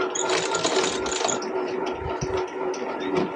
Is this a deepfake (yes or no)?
no